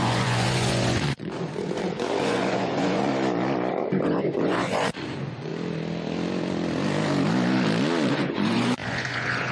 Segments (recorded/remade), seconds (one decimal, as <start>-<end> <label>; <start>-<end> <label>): 0.0-3.1 remade; 3.1-3.7 recorded; 3.7-5.5 remade; 5.5-8.1 recorded; 8.1-9.5 remade